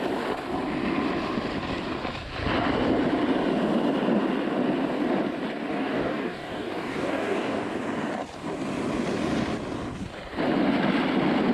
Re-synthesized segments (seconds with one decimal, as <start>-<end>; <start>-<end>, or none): 5.7-7.8